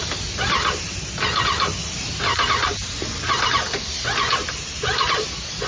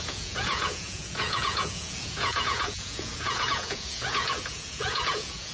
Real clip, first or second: first